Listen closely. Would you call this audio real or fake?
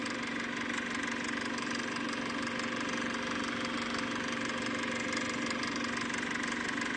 real